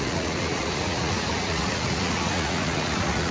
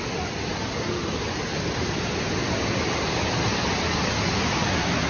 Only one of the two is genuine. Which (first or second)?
second